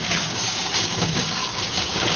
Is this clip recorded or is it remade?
remade